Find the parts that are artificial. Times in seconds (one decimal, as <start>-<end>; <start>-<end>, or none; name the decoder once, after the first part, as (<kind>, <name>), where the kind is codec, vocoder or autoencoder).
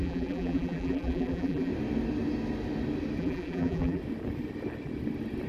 0.0-1.7 (vocoder, BigVGAN v2); 3.2-4.0